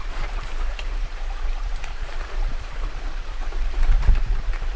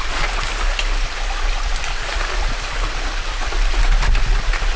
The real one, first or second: second